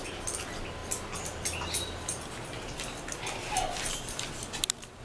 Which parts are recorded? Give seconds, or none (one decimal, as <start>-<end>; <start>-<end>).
0.0-5.0